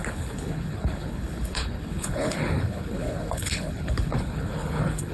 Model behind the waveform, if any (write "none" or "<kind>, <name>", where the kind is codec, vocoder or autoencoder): codec, HILCodec